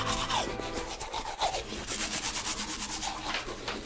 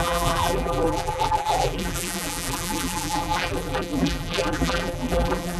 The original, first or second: first